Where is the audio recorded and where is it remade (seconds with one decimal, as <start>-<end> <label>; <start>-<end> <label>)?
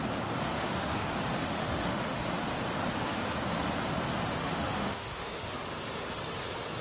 0.0-0.5 recorded; 0.5-1.1 remade; 1.1-1.6 recorded; 1.6-2.2 remade; 2.2-4.4 recorded; 4.4-5.5 remade; 5.5-6.8 recorded